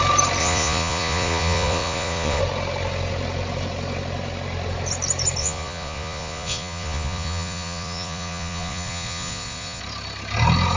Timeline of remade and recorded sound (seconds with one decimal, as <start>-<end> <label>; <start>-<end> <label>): 0.0-0.4 recorded; 0.4-2.4 remade; 2.4-5.4 recorded; 5.4-9.8 remade; 9.8-10.8 recorded